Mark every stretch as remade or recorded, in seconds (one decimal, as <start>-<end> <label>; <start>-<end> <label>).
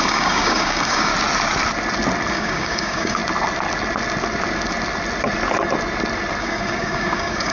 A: 0.0-1.1 remade; 1.1-2.3 recorded; 2.3-3.2 remade; 3.2-6.4 recorded; 6.4-7.5 remade